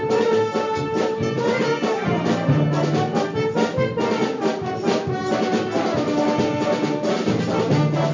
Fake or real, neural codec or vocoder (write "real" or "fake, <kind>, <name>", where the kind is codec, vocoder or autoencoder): real